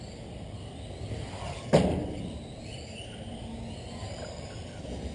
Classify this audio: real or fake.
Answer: real